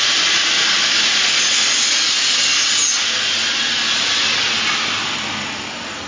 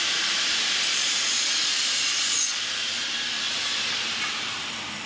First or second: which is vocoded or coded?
second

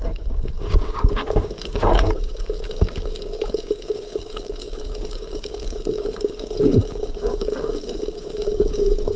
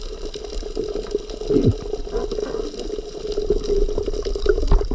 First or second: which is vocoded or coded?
first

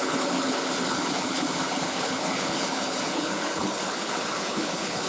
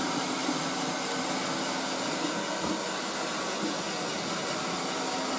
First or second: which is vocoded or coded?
first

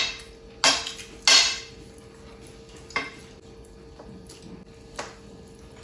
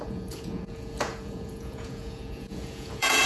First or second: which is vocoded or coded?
second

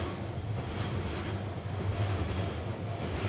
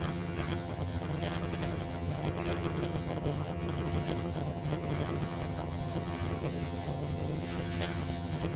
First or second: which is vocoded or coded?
second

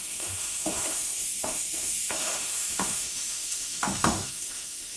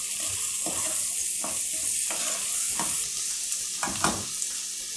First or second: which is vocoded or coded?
first